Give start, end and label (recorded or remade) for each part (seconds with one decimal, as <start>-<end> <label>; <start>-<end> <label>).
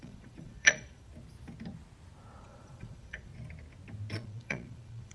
0.0-1.1 remade; 1.1-2.4 recorded; 2.4-3.3 remade; 3.3-4.1 recorded; 4.1-5.1 remade